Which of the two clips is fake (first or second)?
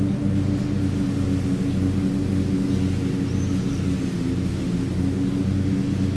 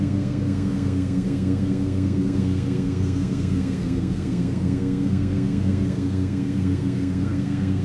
second